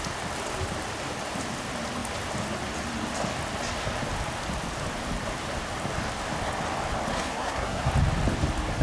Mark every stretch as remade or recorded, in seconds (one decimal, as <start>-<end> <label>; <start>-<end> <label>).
0.0-7.1 recorded; 7.1-7.9 remade; 7.9-8.8 recorded